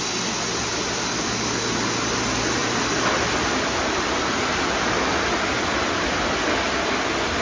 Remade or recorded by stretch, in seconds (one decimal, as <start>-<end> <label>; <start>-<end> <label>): 0.0-2.6 recorded; 2.6-4.1 remade; 4.1-7.4 recorded